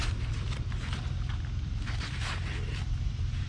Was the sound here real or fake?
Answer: fake